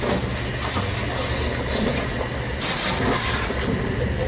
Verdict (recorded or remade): recorded